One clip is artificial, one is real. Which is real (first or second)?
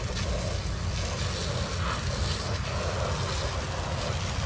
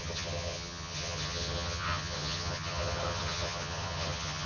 first